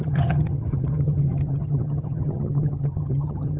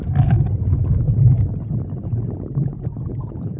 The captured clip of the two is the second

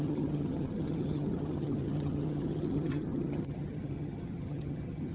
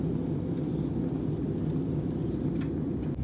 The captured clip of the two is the second